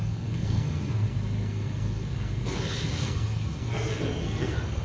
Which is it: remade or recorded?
remade